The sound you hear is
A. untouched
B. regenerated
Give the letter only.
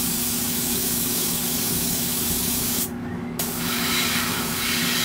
B